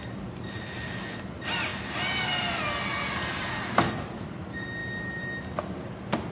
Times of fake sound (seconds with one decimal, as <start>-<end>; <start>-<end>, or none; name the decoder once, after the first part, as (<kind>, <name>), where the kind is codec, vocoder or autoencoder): none